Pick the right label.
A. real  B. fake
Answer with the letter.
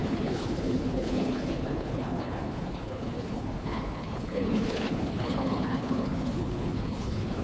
B